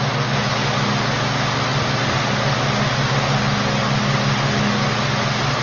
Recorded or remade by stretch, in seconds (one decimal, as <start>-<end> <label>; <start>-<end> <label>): 0.0-5.6 recorded